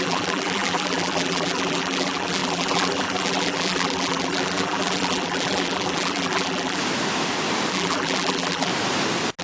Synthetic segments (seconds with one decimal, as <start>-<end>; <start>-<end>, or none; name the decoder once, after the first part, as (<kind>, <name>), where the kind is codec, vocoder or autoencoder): 0.0-6.8 (vocoder, BigVGAN v2); 7.7-8.7